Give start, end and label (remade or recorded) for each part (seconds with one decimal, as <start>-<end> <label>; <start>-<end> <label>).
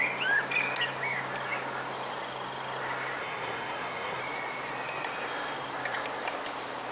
0.0-3.2 recorded; 3.2-4.2 remade; 4.2-6.9 recorded